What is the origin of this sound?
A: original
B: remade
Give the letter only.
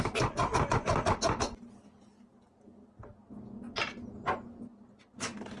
A